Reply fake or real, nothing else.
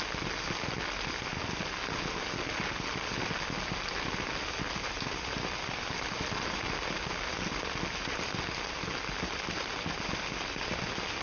real